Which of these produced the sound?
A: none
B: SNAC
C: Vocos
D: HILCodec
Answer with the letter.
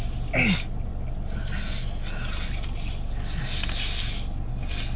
A